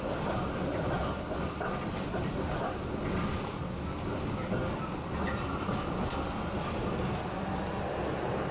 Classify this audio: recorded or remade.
recorded